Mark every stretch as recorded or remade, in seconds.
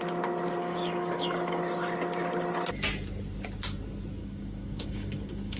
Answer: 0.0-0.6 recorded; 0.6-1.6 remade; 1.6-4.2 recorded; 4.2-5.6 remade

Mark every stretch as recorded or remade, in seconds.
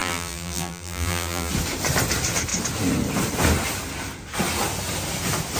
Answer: 0.0-1.5 remade; 1.5-5.6 recorded